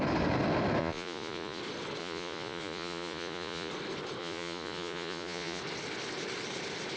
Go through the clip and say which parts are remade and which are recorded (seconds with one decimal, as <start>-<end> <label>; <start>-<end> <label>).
0.0-0.8 recorded; 0.8-1.6 remade; 1.6-2.0 recorded; 2.0-3.7 remade; 3.7-4.2 recorded; 4.2-5.6 remade; 5.6-7.0 recorded